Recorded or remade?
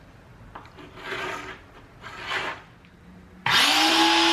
recorded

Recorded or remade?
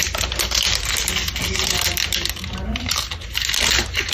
recorded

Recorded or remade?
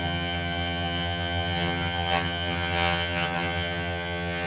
remade